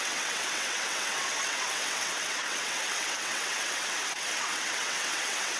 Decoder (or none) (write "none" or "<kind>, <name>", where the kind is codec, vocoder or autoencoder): vocoder, WaveNeXt